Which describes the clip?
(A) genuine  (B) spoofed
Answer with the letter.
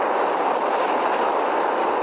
A